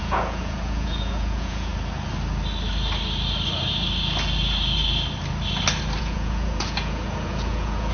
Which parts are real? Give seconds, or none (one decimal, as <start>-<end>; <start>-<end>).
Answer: 1.7-6.0